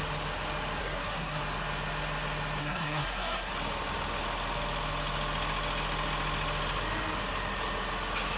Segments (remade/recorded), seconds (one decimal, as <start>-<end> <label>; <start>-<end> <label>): 0.0-0.8 recorded; 0.8-1.4 remade; 1.4-2.6 recorded; 2.6-3.5 remade; 3.5-8.4 recorded